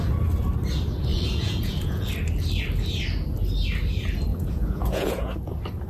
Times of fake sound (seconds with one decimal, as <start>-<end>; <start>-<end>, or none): 1.1-2.1; 4.3-5.3